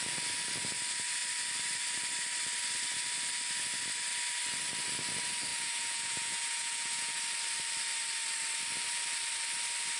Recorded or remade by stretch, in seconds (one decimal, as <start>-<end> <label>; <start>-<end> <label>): 0.0-5.5 recorded; 5.5-7.2 remade; 7.2-10.0 recorded